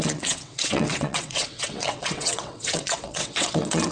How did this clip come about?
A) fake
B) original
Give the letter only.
A